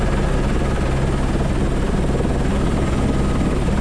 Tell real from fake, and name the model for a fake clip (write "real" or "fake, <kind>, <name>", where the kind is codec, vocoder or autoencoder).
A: real